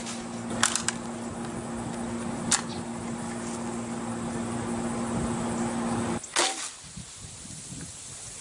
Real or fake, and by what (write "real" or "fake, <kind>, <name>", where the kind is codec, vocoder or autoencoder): real